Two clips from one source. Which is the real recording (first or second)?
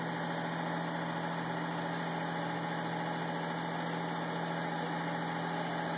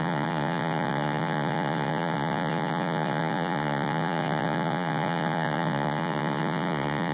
first